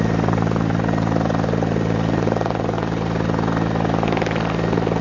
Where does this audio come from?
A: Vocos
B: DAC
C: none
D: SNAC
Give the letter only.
C